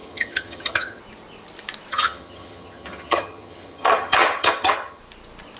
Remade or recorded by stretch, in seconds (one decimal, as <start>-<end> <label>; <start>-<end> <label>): 0.0-1.0 remade; 1.0-1.9 recorded; 1.9-5.0 remade; 5.0-5.6 recorded